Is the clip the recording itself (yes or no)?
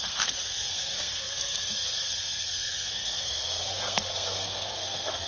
no